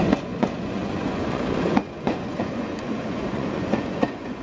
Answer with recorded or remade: remade